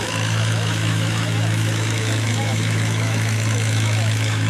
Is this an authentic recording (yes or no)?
no